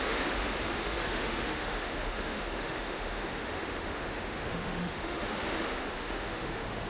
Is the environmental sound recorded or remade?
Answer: remade